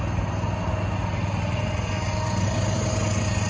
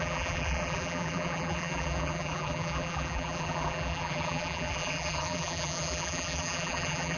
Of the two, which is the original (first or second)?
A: first